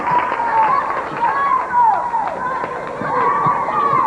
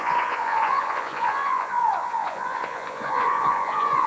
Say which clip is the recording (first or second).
first